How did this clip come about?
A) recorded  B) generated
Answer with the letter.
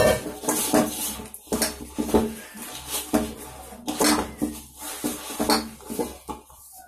A